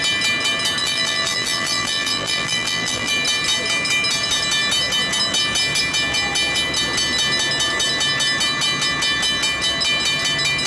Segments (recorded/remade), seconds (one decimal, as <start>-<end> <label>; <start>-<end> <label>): 0.0-0.8 recorded; 0.8-3.1 remade; 3.1-10.7 recorded